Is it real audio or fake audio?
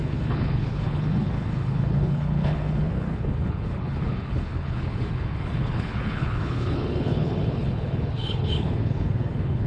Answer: fake